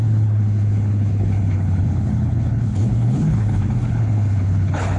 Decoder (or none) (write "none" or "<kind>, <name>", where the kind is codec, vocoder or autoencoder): codec, HILCodec